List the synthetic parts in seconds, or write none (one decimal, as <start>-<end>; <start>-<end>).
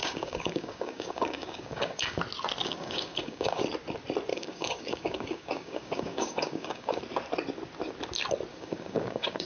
0.0-2.2; 2.6-3.6; 4.3-7.0; 8.5-9.5